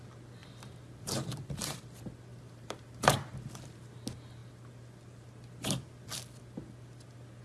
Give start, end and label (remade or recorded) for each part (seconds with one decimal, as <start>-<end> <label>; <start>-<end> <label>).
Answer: 0.0-0.4 recorded; 0.4-1.8 remade; 1.8-2.3 recorded; 2.3-3.5 remade; 3.5-7.4 recorded